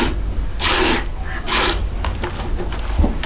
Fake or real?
real